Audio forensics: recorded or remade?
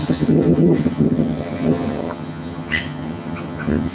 remade